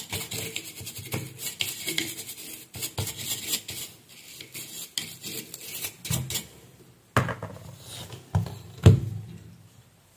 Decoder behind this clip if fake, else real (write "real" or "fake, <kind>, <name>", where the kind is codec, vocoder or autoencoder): real